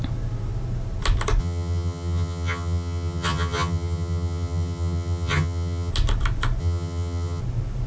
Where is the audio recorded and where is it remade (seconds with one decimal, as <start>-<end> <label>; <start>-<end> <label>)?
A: 0.0-1.4 recorded; 1.4-5.9 remade; 5.9-6.6 recorded; 6.6-7.4 remade; 7.4-7.9 recorded